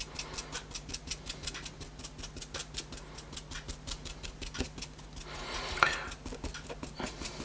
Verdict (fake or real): real